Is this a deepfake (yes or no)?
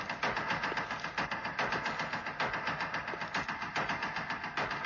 no